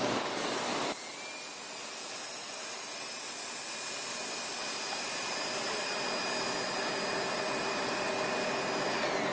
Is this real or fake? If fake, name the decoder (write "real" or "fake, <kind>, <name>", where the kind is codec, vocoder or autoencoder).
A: real